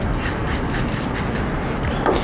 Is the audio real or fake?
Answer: real